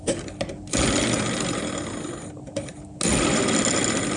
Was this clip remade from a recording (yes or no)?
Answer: no